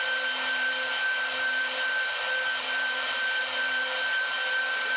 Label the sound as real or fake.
real